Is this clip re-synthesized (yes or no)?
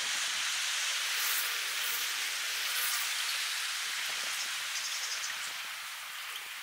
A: no